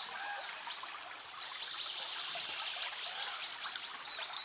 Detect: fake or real real